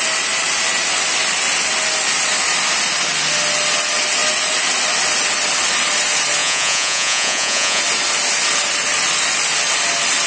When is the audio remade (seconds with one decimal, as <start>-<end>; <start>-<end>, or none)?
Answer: 6.4-7.8